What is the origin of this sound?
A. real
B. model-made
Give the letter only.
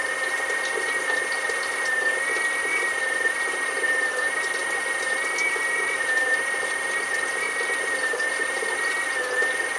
A